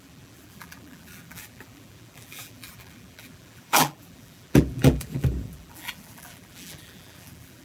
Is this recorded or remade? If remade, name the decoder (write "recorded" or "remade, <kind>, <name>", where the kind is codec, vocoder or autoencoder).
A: remade, vocoder, BigVGAN v2